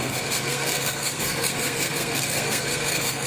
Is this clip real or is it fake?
fake